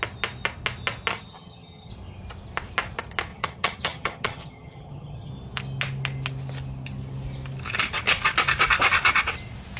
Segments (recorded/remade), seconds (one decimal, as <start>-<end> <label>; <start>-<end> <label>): 0.0-1.1 recorded; 1.1-1.9 remade; 1.9-3.3 recorded; 3.3-5.3 remade; 5.3-9.8 recorded